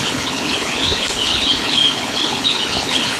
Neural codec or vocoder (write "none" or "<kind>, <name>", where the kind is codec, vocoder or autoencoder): codec, HILCodec